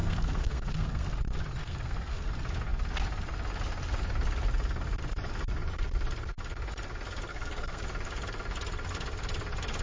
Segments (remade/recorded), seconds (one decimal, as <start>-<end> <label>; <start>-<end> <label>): 0.0-1.1 remade; 1.1-1.6 recorded; 1.6-2.3 remade; 2.3-7.3 recorded; 7.3-7.8 remade; 7.8-9.8 recorded